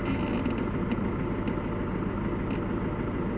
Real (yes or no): yes